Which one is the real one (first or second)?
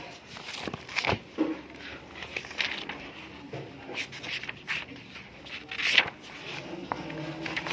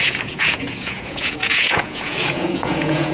first